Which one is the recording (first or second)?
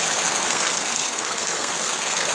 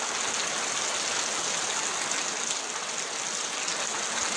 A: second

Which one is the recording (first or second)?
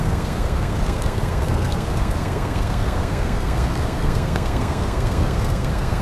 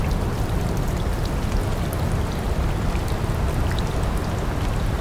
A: second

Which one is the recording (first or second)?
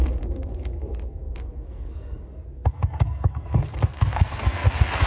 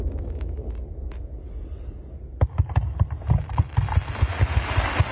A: second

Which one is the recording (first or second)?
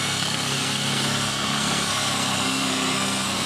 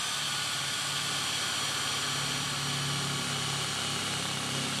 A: second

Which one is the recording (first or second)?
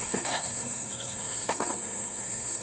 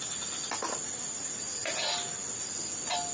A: second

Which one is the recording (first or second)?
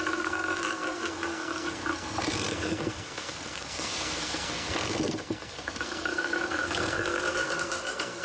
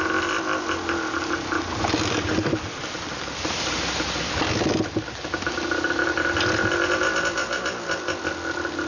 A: second